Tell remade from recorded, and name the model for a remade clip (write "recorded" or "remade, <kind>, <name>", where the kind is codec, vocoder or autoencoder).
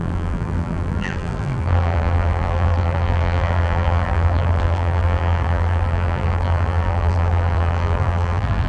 remade, vocoder, BigVGAN v2